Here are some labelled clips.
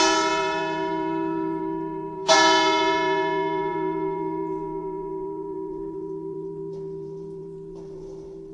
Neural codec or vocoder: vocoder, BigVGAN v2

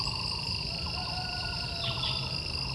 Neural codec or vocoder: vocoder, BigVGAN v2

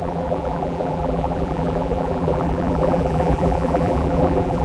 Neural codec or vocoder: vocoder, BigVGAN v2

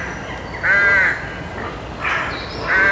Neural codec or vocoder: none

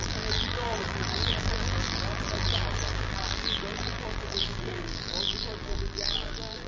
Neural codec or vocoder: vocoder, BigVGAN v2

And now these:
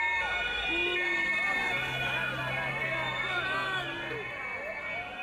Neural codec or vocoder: none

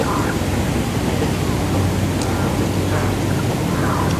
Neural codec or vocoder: none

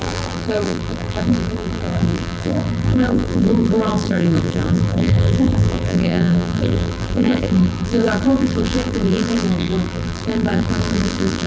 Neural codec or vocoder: vocoder, BigVGAN v2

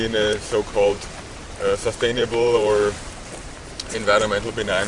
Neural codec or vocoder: vocoder, BigVGAN v2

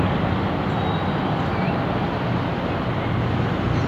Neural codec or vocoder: none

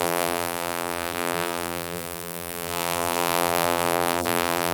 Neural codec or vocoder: vocoder, BigVGAN v2